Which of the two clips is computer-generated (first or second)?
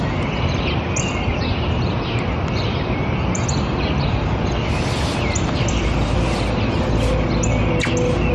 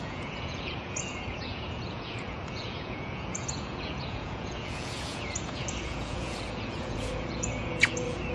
second